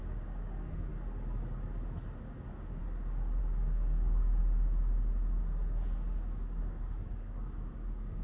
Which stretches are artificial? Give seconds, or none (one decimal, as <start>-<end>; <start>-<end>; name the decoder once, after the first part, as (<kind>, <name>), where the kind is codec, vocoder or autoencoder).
0.0-0.9 (codec, DAC); 2.2-2.8; 3.4-4.4; 6.6-8.2